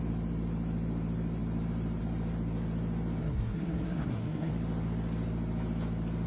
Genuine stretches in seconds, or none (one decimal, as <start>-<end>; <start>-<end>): 0.0-3.2; 4.5-6.3